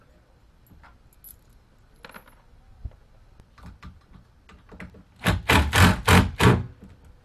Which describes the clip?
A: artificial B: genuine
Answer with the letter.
B